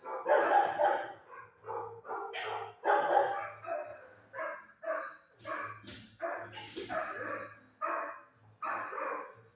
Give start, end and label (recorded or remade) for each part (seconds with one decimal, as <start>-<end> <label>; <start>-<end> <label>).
0.0-9.6 recorded